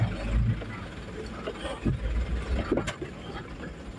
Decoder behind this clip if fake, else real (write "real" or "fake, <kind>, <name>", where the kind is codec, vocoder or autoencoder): real